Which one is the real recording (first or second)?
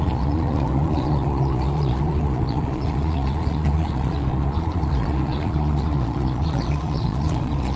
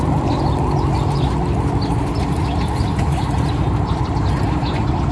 second